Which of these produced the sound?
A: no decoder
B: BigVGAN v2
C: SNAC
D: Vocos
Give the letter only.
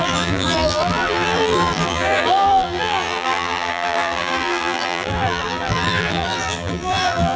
B